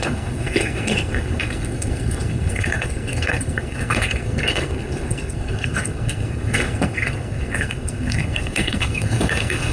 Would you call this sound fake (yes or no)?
yes